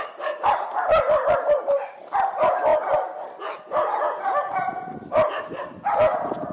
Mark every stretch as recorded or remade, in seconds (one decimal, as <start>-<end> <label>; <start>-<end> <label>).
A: 0.0-6.5 recorded